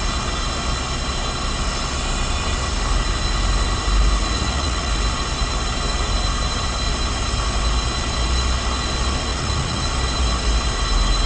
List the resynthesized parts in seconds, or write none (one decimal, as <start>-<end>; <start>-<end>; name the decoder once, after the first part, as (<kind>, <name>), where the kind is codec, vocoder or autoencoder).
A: 4.2-4.9 (vocoder, Vocos); 9.3-9.8